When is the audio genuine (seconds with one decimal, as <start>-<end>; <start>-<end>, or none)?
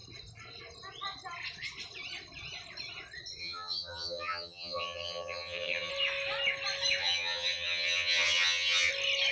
0.0-3.4; 5.9-7.0; 8.9-9.3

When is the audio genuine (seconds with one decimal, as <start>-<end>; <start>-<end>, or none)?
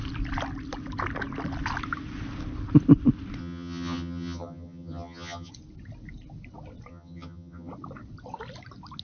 0.0-3.4; 5.5-6.9; 7.7-9.0